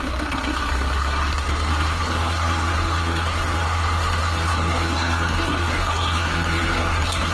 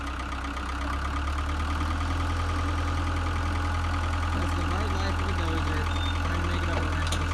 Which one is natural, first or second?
second